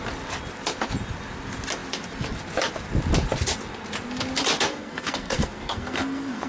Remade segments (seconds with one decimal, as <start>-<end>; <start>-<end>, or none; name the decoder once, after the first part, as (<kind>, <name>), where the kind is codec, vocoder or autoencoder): 4.7-6.5 (codec, SNAC)